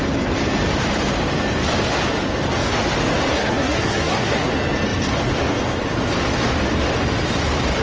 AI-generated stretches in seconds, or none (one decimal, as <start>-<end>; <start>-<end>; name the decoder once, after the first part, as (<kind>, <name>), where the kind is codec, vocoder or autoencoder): 3.3-4.5 (codec, SNAC)